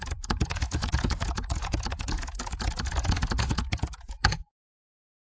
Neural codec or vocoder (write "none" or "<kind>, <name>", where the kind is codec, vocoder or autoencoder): vocoder, Vocos